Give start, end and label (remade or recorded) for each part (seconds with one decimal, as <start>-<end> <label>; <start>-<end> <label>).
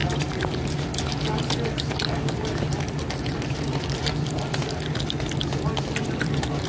0.0-0.9 remade; 0.9-6.7 recorded